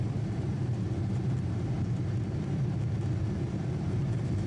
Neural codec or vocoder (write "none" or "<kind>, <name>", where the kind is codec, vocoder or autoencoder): vocoder, BigVGAN v2